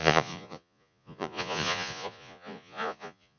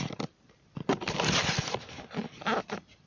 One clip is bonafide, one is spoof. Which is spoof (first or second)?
first